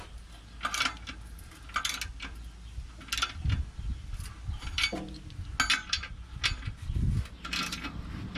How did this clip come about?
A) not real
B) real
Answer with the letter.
B